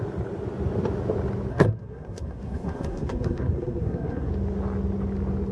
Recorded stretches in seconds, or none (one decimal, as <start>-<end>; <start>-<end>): 0.0-1.5; 4.3-5.5